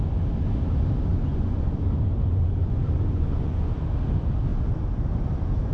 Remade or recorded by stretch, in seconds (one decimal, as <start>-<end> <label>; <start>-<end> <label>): 0.0-1.1 recorded; 1.1-1.7 remade; 1.7-2.6 recorded; 2.6-3.7 remade; 3.7-5.7 recorded